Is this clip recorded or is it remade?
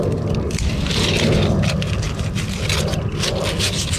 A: recorded